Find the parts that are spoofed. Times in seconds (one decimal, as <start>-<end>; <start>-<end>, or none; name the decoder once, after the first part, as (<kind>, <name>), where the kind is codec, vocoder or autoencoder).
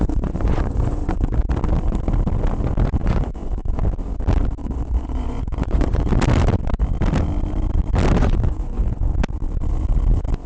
0.0-1.4 (vocoder, Vocos); 3.0-3.8; 4.6-6.1; 8.2-9.0